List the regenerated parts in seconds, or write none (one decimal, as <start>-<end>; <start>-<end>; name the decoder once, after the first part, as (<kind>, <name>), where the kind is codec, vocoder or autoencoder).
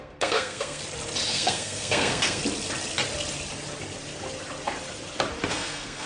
0.0-0.8 (codec, SNAC); 1.3-2.4; 5.5-6.1